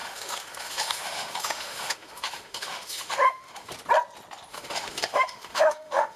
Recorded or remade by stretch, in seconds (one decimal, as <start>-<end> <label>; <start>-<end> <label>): 0.0-3.7 remade; 3.7-4.5 recorded; 4.5-6.2 remade